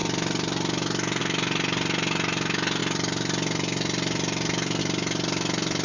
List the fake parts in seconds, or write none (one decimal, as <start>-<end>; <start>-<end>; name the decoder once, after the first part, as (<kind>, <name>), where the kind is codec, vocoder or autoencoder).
none